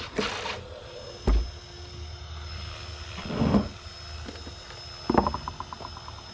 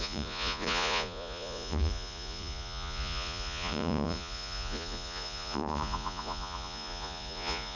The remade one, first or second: second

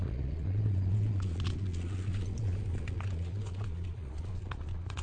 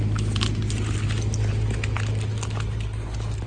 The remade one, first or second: first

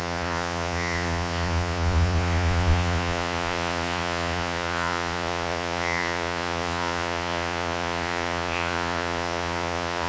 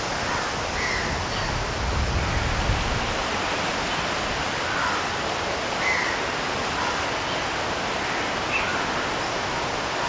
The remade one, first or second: first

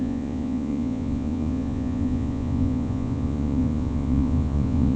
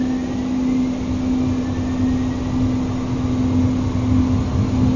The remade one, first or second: first